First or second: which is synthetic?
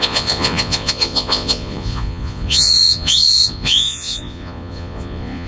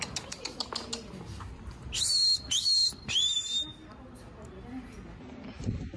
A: first